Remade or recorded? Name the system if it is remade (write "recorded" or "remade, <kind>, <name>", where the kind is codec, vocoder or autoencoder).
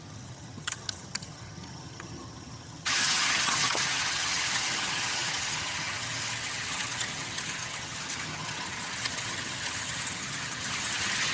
remade, vocoder, HiFi-GAN